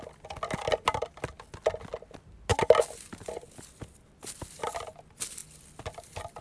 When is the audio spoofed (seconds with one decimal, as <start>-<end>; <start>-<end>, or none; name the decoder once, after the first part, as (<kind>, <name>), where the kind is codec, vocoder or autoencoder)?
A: none